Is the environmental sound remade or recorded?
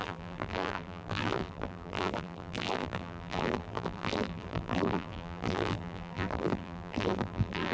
remade